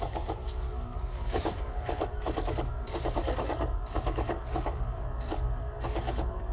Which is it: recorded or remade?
remade